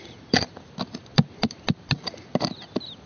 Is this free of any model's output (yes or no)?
yes